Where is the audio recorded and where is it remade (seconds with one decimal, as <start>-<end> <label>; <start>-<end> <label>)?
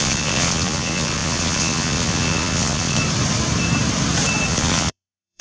0.0-3.0 remade; 3.0-4.5 recorded; 4.5-5.4 remade